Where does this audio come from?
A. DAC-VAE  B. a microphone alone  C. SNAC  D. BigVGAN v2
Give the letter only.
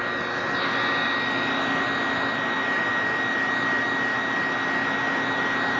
B